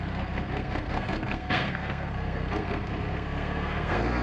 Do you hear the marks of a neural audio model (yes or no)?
yes